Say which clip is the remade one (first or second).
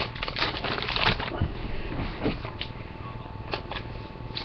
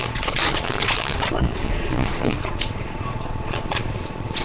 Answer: second